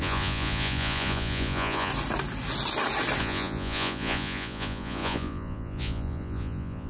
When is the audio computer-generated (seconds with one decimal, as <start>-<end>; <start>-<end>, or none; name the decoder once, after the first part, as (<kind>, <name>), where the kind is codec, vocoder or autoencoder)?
0.0-1.9 (vocoder, Vocos); 3.2-6.9